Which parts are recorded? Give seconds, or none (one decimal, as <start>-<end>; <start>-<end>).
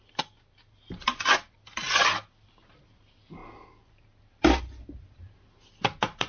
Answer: 0.0-6.3